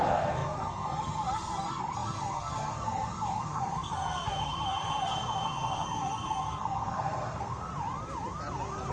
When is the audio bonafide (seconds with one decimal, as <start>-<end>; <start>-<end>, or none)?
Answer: 7.7-8.9